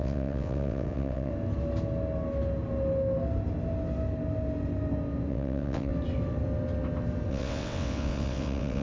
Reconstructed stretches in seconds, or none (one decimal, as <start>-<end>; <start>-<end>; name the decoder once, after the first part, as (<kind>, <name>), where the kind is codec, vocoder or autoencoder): 0.0-1.3 (vocoder, WaveNeXt); 5.3-5.9; 7.3-8.8